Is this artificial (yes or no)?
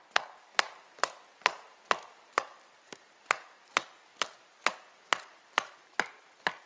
no